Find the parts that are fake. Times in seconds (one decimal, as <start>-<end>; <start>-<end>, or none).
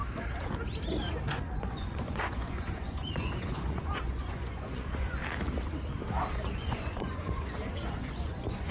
1.3-5.2; 6.3-8.7